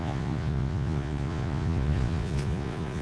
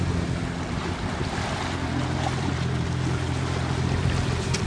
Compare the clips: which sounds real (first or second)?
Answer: second